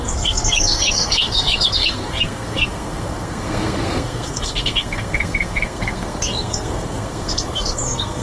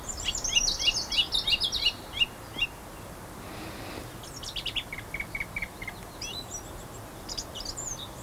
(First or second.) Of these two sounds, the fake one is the first